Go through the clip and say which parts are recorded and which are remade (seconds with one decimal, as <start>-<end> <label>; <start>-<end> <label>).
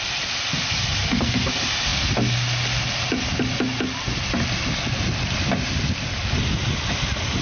0.0-1.0 recorded; 1.0-1.5 remade; 1.5-7.4 recorded